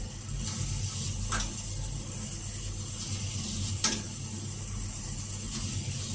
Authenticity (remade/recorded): recorded